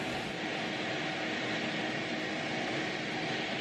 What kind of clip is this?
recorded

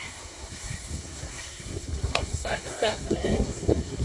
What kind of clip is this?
remade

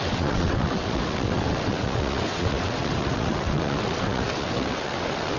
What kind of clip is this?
remade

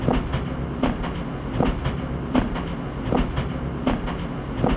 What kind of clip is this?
recorded